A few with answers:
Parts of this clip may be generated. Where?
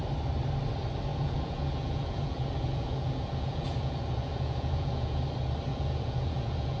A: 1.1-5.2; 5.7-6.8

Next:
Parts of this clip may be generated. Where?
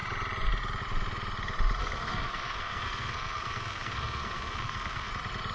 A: 1.8-5.1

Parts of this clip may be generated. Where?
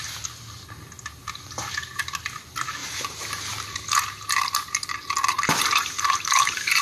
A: 1.2-2.0; 2.8-6.8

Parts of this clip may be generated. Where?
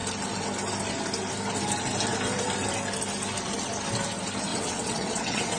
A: 4.5-5.6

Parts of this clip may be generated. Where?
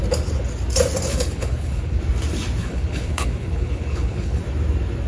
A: 1.1-2.0; 2.6-4.4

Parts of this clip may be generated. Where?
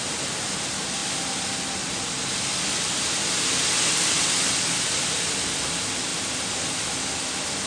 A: none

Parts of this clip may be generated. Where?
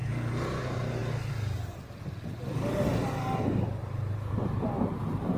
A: 0.6-1.0; 3.4-5.4